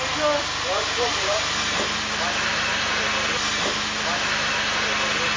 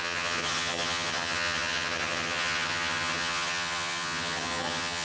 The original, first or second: first